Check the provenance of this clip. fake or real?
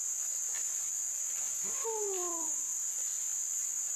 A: real